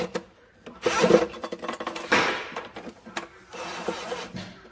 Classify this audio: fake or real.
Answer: fake